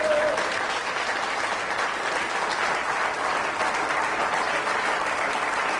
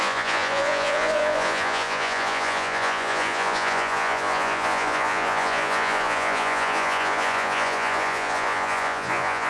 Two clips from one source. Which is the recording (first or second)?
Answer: first